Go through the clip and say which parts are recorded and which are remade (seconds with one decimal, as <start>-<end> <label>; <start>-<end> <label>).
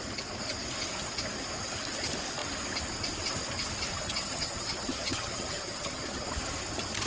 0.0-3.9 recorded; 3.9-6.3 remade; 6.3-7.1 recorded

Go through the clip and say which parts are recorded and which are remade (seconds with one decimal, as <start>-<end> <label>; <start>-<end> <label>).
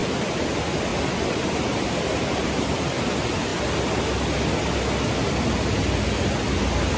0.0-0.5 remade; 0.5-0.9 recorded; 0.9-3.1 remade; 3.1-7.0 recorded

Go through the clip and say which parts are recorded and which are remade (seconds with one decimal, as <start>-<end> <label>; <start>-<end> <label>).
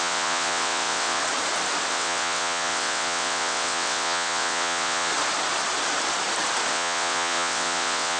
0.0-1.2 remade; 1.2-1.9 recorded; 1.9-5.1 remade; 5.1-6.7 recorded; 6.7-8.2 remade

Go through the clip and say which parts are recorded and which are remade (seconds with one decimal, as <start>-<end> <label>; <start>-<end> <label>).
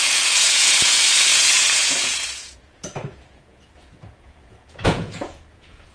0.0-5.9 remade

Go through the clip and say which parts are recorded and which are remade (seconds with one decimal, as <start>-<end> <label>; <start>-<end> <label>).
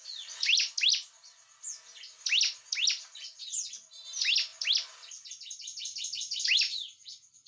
0.0-7.5 recorded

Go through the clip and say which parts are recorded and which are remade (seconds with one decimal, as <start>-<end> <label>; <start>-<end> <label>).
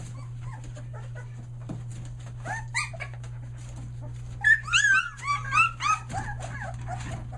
0.0-7.4 recorded